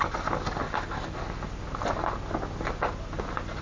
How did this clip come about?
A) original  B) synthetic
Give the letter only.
A